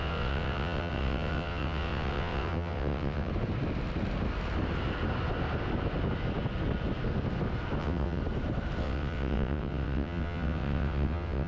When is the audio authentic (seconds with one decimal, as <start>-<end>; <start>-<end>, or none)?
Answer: 3.3-7.8; 8.2-8.8